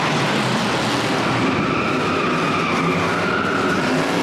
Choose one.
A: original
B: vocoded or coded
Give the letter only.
A